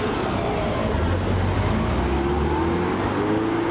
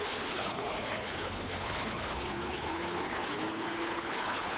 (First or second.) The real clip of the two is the first